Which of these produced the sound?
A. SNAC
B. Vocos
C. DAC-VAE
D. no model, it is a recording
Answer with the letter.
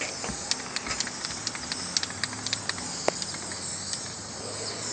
D